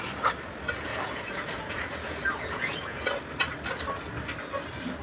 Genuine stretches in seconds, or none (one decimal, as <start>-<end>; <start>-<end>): 0.0-0.9; 3.2-5.0